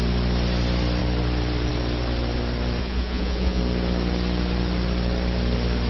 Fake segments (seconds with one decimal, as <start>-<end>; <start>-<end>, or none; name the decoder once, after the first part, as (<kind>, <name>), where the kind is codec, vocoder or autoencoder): 2.8-3.6 (vocoder, Vocos)